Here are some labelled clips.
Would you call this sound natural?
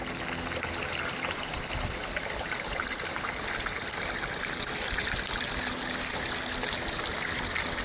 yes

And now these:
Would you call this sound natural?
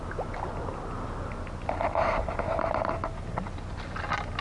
yes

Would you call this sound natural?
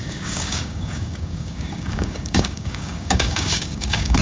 no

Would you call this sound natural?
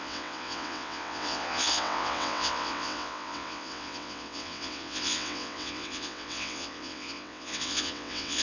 no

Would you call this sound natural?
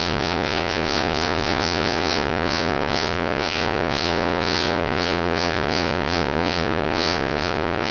no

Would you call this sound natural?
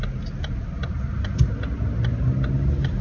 yes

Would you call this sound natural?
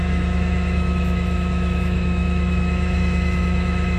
no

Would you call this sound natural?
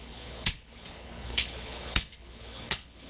no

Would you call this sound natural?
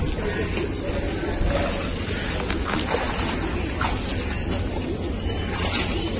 yes